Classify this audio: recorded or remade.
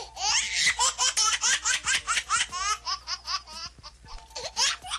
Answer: recorded